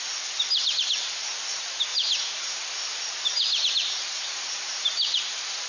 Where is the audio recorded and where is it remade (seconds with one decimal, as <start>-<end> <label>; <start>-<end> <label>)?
0.0-5.7 recorded